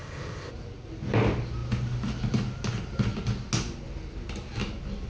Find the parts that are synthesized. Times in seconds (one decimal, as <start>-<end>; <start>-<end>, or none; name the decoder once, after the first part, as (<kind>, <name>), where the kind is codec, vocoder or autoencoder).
0.0-0.5 (codec, ZipCodec)